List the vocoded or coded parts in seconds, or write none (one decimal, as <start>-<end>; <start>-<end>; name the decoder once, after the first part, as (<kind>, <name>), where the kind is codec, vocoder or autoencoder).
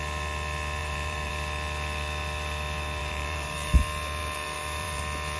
0.8-1.3 (vocoder, BigVGAN v2); 3.0-3.7; 4.2-5.0